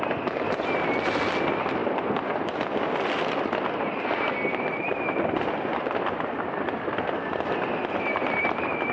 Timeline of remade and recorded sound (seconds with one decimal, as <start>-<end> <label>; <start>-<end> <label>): 0.0-8.9 recorded